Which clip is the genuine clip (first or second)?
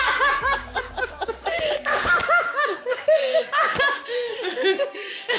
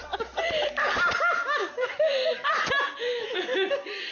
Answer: second